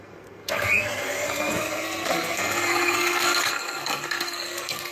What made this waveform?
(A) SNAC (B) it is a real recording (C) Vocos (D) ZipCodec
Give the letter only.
A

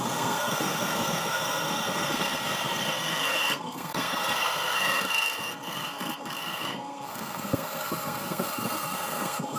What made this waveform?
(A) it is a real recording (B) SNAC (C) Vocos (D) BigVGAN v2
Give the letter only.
B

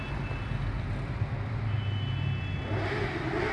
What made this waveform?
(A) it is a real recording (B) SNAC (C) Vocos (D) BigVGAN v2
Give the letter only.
A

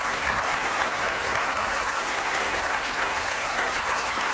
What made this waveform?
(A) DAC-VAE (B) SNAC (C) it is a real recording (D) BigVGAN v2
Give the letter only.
B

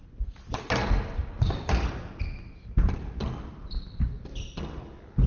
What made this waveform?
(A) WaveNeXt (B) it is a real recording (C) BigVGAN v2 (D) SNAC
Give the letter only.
B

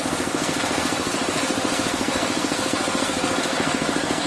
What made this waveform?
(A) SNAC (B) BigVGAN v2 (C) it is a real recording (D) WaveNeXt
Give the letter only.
A